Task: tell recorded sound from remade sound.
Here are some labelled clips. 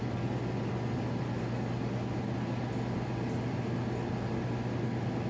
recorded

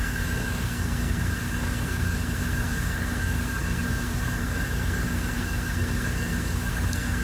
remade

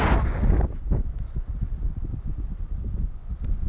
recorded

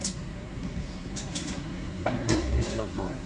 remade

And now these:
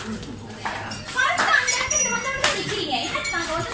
remade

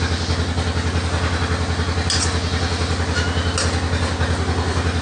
recorded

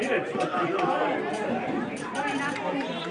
recorded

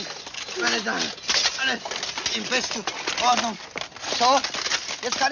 recorded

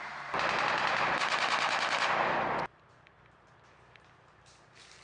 recorded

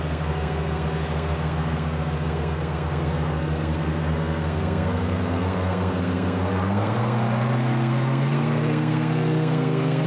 remade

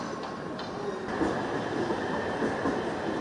recorded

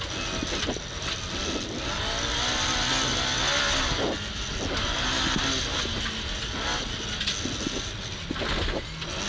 recorded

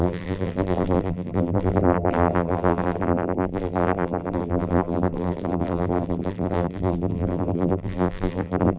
remade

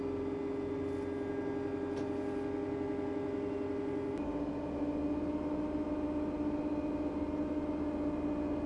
recorded